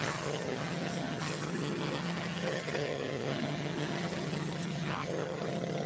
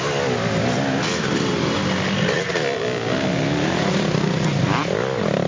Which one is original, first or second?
second